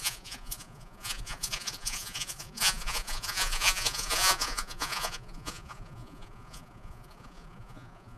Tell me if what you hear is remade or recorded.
remade